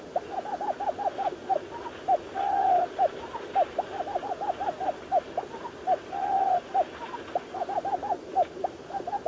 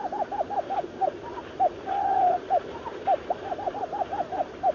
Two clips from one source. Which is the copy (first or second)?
second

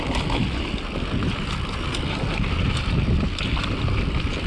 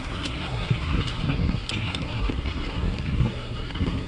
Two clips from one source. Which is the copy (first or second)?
second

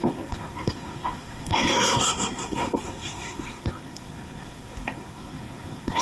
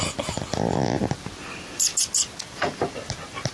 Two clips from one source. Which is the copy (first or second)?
first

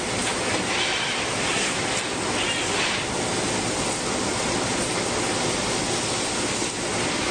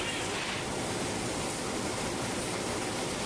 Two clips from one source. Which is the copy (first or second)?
second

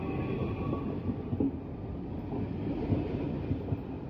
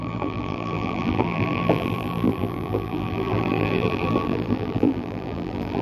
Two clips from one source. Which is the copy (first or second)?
second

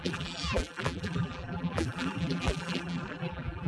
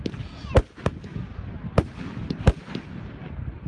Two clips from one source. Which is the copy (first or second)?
first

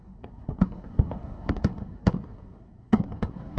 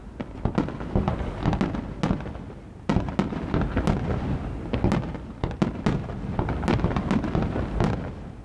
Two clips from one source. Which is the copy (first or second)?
first